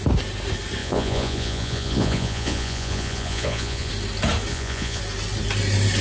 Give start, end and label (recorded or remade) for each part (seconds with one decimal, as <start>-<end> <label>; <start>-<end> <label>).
0.0-0.8 recorded; 0.8-3.9 remade; 3.9-4.5 recorded; 4.5-5.0 remade; 5.0-6.0 recorded

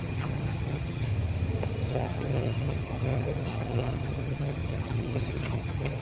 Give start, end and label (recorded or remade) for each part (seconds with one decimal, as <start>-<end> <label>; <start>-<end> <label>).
0.0-1.1 remade; 1.1-1.9 recorded; 1.9-6.0 remade

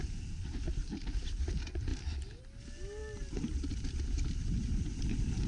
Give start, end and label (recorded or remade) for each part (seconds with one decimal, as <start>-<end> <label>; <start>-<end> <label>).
0.0-5.5 recorded

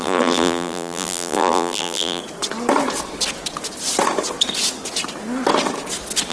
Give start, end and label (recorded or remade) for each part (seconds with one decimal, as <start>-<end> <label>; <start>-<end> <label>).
0.0-2.2 remade; 2.2-6.3 recorded

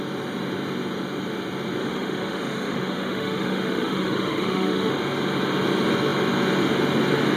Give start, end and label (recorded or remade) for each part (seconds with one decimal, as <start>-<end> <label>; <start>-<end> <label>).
0.0-1.8 recorded; 1.8-4.9 remade; 4.9-7.4 recorded

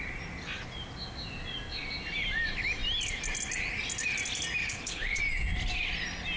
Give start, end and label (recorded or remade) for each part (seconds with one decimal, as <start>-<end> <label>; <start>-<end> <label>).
0.0-4.6 recorded; 4.6-5.2 remade; 5.2-6.4 recorded

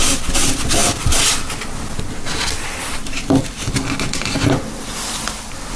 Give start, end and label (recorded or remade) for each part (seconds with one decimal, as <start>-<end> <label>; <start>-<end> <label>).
0.0-5.8 recorded